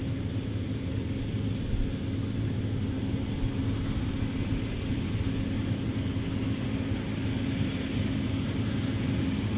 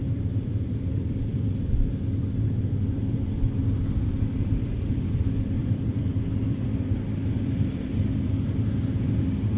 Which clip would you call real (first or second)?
first